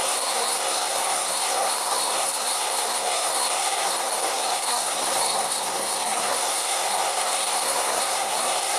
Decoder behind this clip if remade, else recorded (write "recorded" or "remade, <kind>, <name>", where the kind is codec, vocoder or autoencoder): remade, codec, SNAC